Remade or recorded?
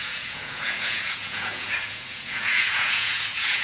remade